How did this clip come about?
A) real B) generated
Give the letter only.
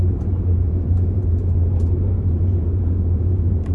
B